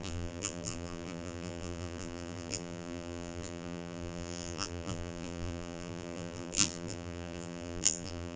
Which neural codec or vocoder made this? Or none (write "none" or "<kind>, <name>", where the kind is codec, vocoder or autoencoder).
vocoder, BigVGAN v2